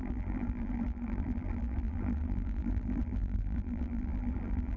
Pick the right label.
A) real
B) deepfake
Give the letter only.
B